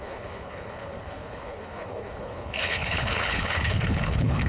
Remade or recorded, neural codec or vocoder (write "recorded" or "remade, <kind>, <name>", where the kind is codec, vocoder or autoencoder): remade, codec, HILCodec